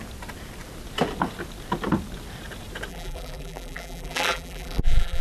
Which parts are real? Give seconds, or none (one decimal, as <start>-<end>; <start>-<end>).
0.0-2.9